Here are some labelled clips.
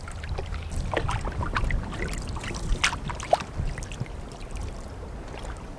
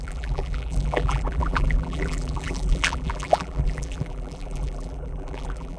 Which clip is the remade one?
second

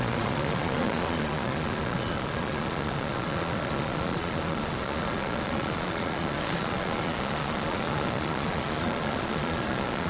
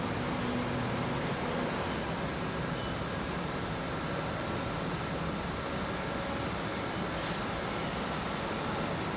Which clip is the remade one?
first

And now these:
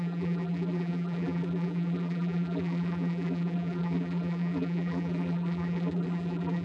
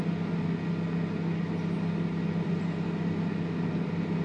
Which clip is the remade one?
first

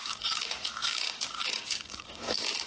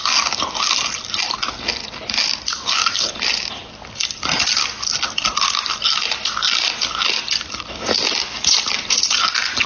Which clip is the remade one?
first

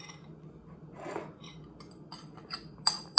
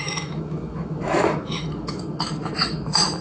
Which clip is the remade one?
second